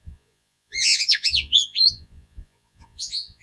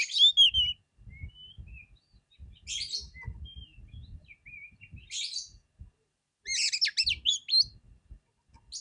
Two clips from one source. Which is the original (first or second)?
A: second